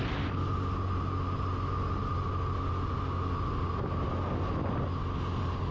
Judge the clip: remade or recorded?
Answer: recorded